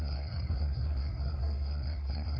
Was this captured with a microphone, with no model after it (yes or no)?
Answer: no